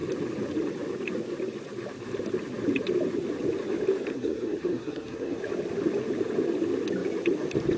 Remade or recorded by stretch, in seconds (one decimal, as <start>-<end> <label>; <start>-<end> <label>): 0.0-4.1 recorded; 4.1-5.4 remade; 5.4-7.8 recorded